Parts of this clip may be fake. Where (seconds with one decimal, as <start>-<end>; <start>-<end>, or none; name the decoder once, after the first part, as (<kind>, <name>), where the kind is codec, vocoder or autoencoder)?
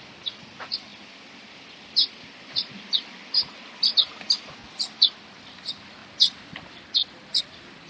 none